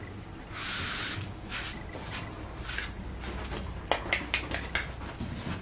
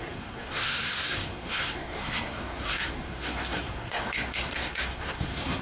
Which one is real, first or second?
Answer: first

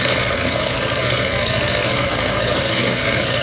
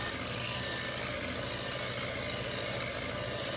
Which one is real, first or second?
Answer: second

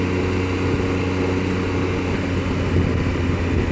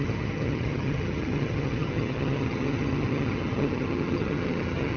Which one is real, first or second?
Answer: first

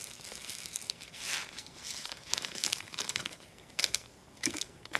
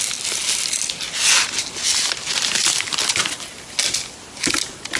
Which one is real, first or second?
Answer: second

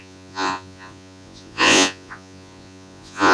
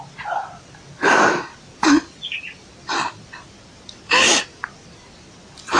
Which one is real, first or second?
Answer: second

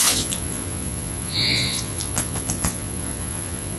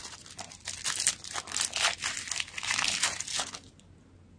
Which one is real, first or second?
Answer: second